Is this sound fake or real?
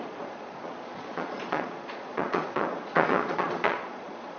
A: fake